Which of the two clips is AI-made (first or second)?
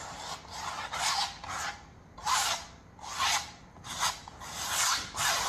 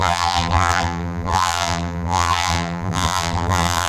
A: second